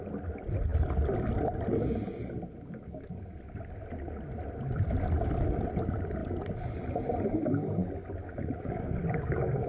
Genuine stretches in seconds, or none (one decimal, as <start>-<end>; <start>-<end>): 0.0-8.2